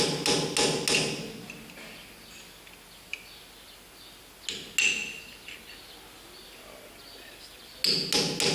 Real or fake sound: real